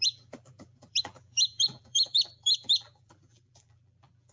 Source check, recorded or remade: remade